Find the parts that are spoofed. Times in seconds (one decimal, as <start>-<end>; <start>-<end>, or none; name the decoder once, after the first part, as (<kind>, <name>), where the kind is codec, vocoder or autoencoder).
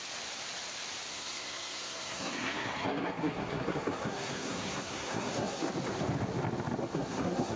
1.1-5.7 (codec, SNAC); 6.8-7.6